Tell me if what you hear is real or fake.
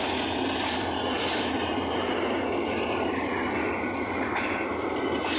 real